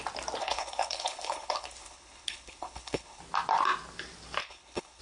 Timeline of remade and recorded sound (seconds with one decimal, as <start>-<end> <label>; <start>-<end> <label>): 0.0-0.4 recorded; 0.4-3.2 remade; 3.2-4.4 recorded; 4.4-5.0 remade